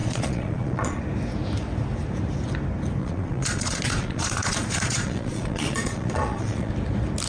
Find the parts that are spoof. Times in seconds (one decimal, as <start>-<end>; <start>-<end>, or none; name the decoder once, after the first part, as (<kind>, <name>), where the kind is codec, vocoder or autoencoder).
0.0-1.0 (vocoder, Vocos); 3.0-6.7